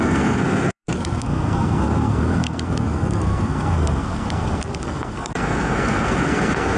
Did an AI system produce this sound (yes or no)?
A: yes